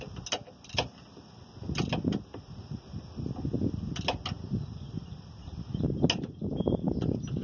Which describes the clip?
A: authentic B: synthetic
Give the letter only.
A